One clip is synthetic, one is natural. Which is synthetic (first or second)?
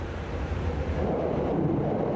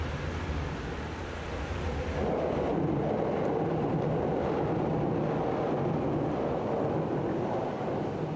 first